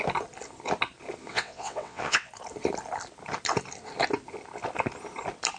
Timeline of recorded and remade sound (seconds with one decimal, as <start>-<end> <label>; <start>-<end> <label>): 0.0-1.3 recorded; 1.3-2.3 remade; 2.3-5.6 recorded